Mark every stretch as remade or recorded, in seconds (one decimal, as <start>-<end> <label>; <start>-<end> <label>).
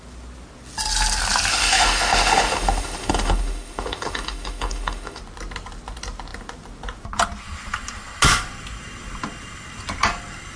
0.0-1.5 recorded; 1.5-5.2 remade; 5.2-10.6 recorded